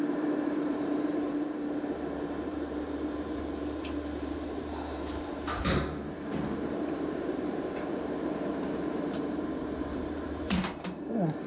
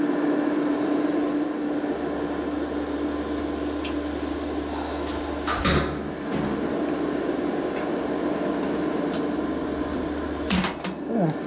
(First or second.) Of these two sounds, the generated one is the first